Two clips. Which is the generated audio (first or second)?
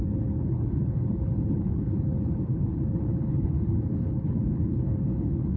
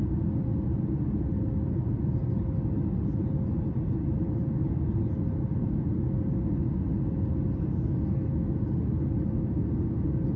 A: first